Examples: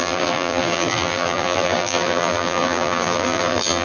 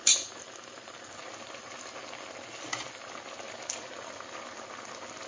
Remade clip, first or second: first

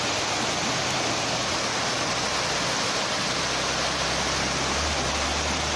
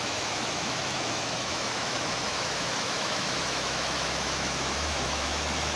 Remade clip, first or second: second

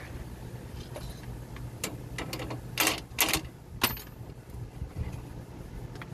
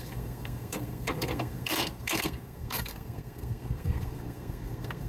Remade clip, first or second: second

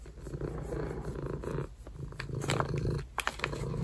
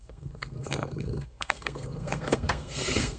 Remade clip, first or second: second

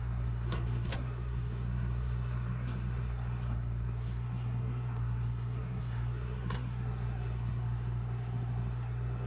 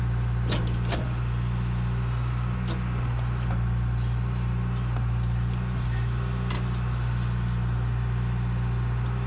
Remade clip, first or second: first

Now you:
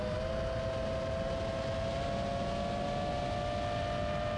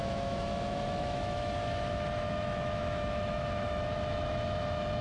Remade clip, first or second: second